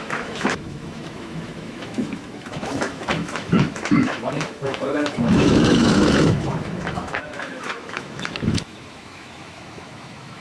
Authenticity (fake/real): fake